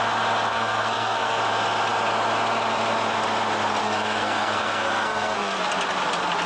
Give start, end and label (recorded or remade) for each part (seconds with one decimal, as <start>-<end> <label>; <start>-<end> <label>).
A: 0.0-0.5 recorded; 0.5-1.4 remade; 1.4-3.8 recorded; 3.8-5.6 remade; 5.6-6.5 recorded